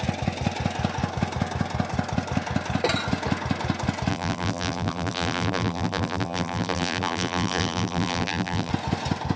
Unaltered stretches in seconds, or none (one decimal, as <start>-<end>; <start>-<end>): 0.0-4.1; 8.7-9.4